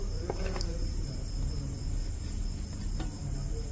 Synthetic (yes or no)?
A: no